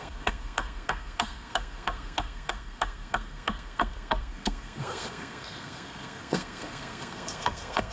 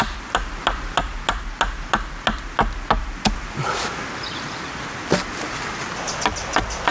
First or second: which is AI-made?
first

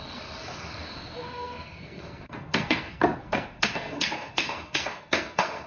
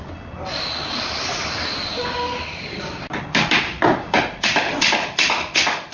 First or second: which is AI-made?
first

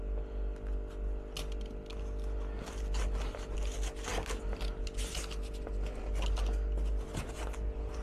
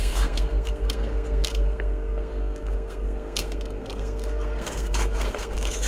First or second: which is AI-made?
second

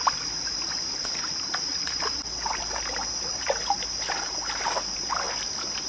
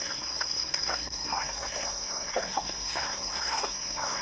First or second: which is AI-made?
second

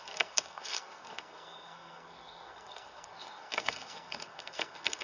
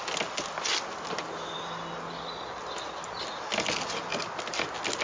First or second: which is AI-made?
first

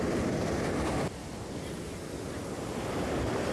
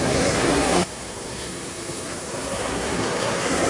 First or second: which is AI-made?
second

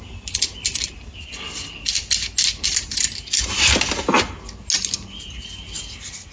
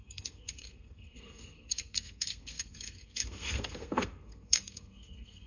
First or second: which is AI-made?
second